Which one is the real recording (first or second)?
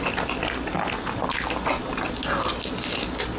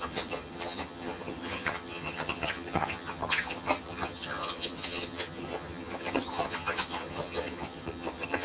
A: first